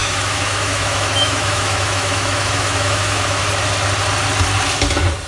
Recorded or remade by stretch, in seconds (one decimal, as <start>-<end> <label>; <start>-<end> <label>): 0.0-3.4 remade; 3.4-5.3 recorded